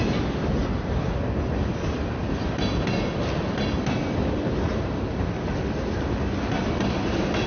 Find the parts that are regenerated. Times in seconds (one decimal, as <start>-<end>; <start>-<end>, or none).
none